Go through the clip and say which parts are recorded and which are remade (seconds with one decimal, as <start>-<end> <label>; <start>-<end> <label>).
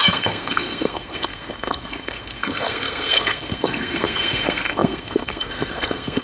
0.0-6.2 remade